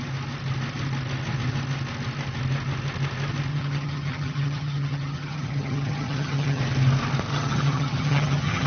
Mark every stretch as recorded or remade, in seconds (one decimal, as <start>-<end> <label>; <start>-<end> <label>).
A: 0.0-3.5 recorded; 3.5-6.6 remade; 6.6-7.3 recorded; 7.3-8.7 remade